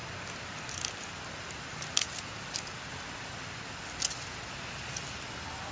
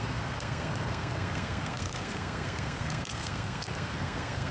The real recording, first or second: first